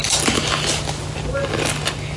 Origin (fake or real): real